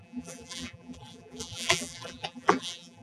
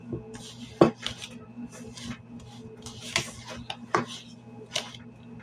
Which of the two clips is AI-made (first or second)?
first